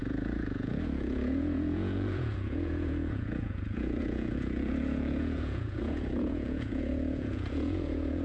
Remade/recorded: remade